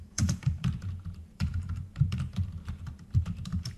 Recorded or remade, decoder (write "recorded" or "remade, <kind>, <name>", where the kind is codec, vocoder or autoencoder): remade, vocoder, BigVGAN v2